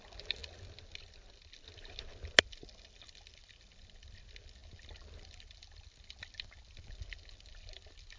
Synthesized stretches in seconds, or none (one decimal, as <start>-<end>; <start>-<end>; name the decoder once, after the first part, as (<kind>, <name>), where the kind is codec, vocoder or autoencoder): none